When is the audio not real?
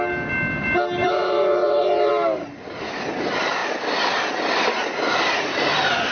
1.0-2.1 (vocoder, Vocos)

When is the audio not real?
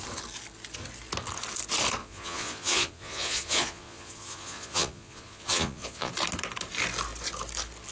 2.0-6.1 (vocoder, Vocos)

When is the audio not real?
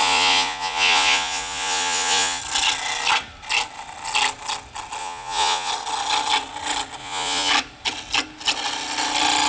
0.0-2.4 (vocoder, Vocos); 5.0-5.7; 7.0-7.5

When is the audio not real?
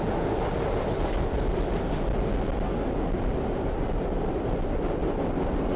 none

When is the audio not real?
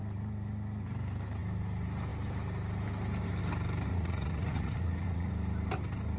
3.9-5.3 (vocoder, Vocos)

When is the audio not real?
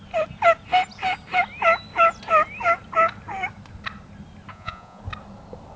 4.5-5.0 (vocoder, Vocos)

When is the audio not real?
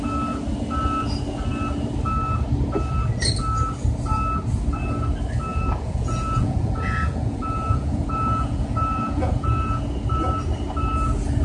5.5-9.8 (vocoder, Vocos)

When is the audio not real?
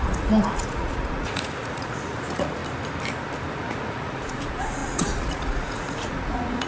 0.0-2.6 (vocoder, Vocos); 3.5-6.7